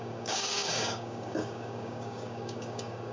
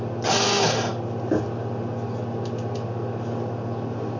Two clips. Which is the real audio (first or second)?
second